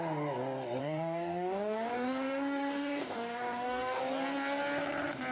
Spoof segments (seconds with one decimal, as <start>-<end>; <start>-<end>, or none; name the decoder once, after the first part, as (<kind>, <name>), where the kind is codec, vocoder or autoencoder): 0.8-4.0 (codec, DAC)